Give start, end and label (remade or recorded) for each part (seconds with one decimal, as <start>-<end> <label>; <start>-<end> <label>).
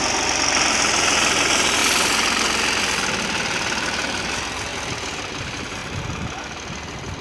0.0-7.2 recorded